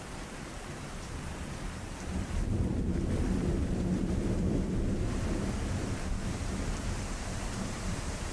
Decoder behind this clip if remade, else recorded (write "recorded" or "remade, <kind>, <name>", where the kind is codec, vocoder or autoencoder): remade, vocoder, BigVGAN v2